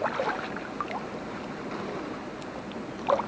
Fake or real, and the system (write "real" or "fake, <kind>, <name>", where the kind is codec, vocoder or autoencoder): real